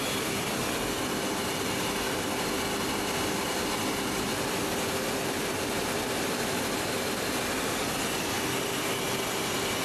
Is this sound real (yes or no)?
yes